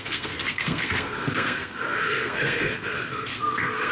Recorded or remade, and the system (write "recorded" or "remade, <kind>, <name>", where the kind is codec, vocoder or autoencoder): remade, codec, SNAC